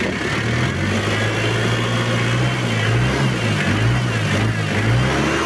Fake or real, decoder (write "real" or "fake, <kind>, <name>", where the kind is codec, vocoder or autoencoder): real